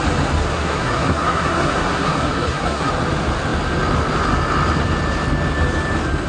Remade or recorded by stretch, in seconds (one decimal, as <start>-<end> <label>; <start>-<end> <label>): 0.0-0.4 recorded; 0.4-2.9 remade; 2.9-6.3 recorded